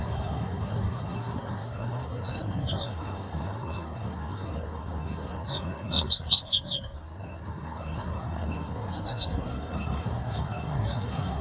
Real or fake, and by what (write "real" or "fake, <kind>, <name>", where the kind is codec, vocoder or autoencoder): fake, codec, SNAC